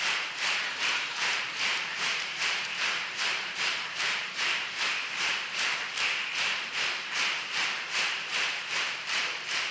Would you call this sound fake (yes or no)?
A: yes